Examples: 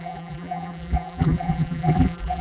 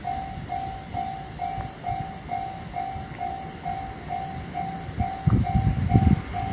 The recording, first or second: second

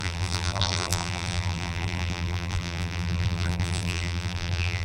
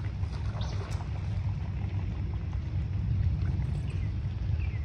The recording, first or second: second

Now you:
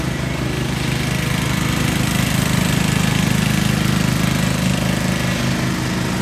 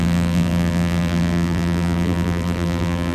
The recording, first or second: first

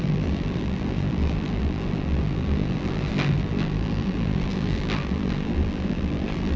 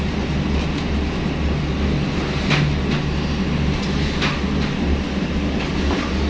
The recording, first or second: second